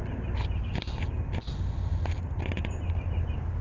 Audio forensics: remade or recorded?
recorded